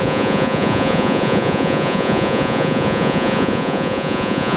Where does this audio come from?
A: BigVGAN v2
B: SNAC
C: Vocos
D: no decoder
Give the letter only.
C